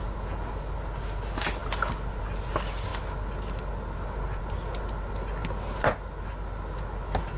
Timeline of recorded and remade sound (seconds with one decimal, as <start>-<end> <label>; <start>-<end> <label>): 0.0-7.4 recorded